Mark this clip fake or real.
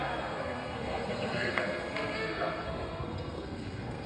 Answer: fake